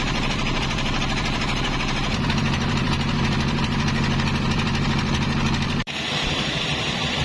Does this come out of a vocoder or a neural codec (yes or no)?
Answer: yes